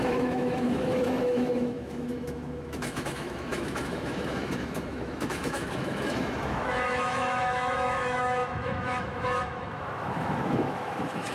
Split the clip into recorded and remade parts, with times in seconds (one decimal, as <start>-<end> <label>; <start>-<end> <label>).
0.0-11.3 remade

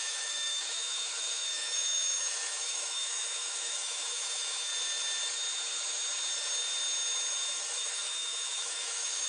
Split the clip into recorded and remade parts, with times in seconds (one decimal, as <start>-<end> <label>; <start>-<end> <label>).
0.0-4.7 remade; 4.7-7.7 recorded; 7.7-9.3 remade

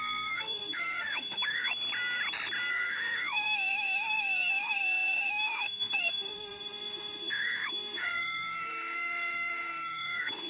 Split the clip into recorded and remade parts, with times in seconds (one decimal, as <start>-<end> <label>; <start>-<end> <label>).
0.0-1.7 remade; 1.7-2.7 recorded; 2.7-10.5 remade